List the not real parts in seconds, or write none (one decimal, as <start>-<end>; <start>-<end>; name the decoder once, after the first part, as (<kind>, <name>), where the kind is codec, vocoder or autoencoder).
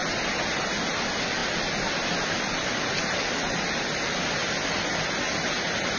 none